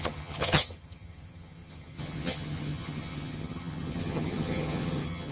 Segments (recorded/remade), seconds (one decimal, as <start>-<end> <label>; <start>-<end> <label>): 0.0-5.3 remade